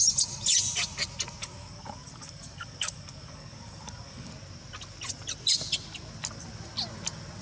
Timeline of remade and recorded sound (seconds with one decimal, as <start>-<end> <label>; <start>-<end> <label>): 0.0-1.4 recorded; 1.4-4.3 remade; 4.3-7.4 recorded